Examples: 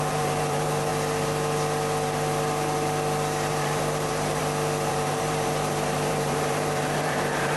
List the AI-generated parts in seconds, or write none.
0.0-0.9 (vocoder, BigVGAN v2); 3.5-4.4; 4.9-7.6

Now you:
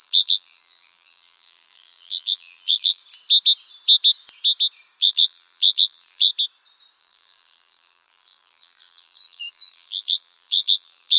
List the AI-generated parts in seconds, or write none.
0.0-3.0 (vocoder, BigVGAN v2); 5.0-6.3; 7.0-11.2

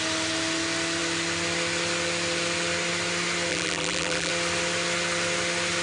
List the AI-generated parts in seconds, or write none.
3.5-4.3 (vocoder, BigVGAN v2)